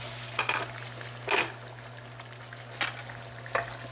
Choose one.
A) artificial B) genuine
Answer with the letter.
B